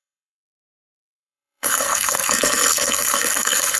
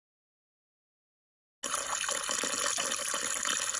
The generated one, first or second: first